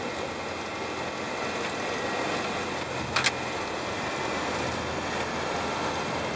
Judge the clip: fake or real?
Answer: real